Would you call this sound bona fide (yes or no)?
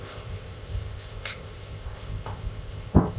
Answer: no